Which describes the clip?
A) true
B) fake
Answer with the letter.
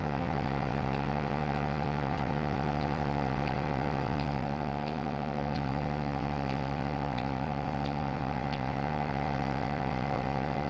B